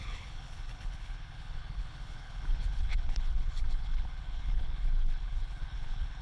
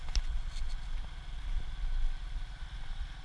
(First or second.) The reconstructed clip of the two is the first